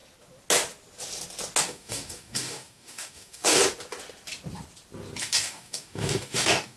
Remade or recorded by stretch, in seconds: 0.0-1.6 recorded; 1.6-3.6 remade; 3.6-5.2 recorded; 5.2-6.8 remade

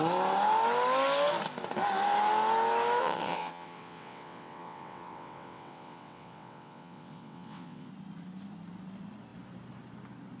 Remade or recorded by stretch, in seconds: 0.0-3.0 recorded; 3.0-7.9 remade; 7.9-10.4 recorded

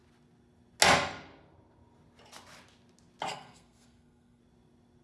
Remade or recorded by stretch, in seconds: 0.0-3.3 recorded; 3.3-4.4 remade; 4.4-5.0 recorded